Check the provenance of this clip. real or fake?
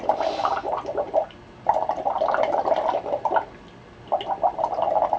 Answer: real